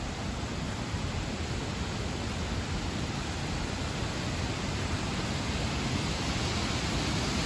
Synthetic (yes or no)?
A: no